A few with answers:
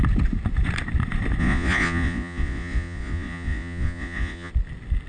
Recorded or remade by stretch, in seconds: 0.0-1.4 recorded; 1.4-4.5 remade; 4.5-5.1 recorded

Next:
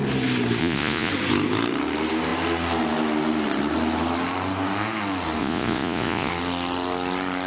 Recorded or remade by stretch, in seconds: 0.0-0.6 recorded; 0.6-1.1 remade; 1.1-5.4 recorded; 5.4-6.3 remade; 6.3-7.5 recorded

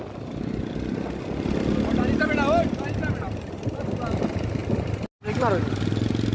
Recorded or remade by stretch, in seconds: 0.0-6.3 recorded

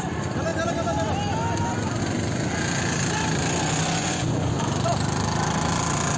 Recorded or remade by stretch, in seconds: 0.0-4.0 recorded; 4.0-4.5 remade; 4.5-6.2 recorded

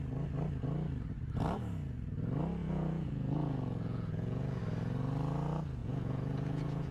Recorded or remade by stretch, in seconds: 0.0-2.6 recorded; 2.6-4.6 remade; 4.6-5.8 recorded; 5.8-6.9 remade

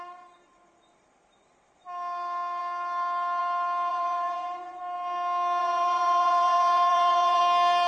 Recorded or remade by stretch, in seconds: 0.0-3.9 recorded; 3.9-4.8 remade; 4.8-5.6 recorded; 5.6-7.4 remade; 7.4-7.9 recorded

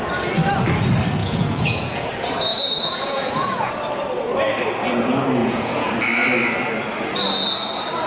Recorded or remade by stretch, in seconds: 0.0-1.2 recorded; 1.2-2.1 remade; 2.1-2.5 recorded; 2.5-3.7 remade; 3.7-5.4 recorded; 5.4-5.9 remade; 5.9-8.1 recorded

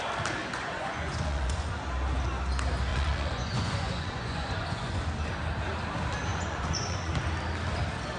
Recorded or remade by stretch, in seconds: 0.0-0.4 recorded; 0.4-1.7 remade; 1.7-2.9 recorded; 2.9-5.1 remade; 5.1-6.3 recorded; 6.3-7.1 remade; 7.1-8.2 recorded